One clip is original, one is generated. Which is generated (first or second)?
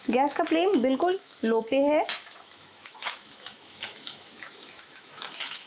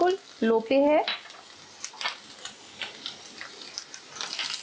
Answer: first